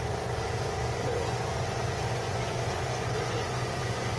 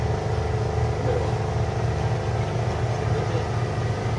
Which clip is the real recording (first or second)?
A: second